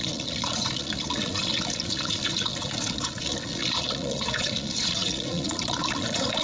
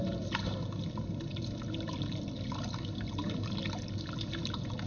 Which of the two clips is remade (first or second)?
first